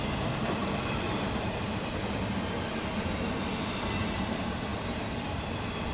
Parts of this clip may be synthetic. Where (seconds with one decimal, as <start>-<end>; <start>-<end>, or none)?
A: none

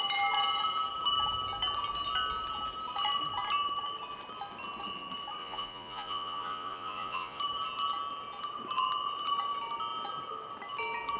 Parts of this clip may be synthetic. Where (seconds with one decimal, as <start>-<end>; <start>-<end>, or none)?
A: 5.4-7.4

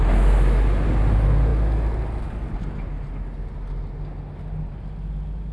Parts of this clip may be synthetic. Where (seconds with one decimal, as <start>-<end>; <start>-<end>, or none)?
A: none

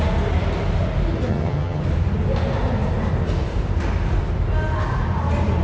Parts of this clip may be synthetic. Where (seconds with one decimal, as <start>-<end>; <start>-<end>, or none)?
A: 1.3-1.8